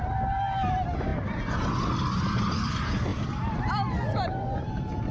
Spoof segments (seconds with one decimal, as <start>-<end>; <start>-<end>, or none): none